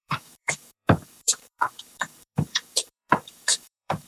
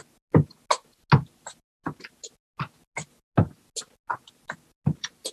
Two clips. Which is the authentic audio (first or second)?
second